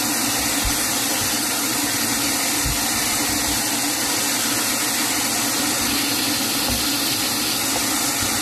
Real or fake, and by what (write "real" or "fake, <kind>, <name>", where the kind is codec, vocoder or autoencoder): real